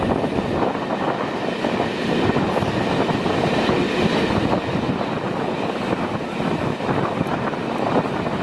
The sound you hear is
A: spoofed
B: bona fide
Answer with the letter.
B